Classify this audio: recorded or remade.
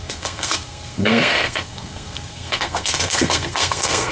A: remade